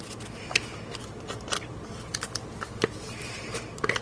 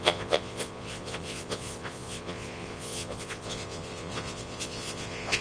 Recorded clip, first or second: first